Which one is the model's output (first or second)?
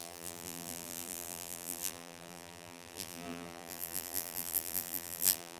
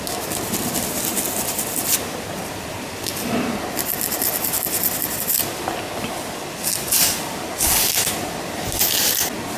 first